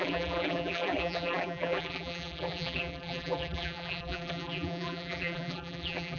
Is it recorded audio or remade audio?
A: remade